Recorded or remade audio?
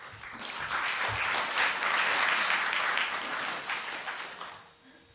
recorded